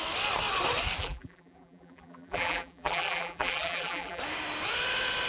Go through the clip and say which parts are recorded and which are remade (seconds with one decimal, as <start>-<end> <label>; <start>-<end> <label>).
0.0-1.0 recorded; 1.0-4.2 remade; 4.2-5.3 recorded